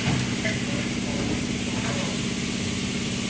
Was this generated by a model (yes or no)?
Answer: no